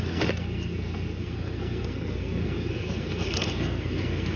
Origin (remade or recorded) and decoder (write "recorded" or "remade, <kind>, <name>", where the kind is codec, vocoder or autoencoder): remade, codec, SNAC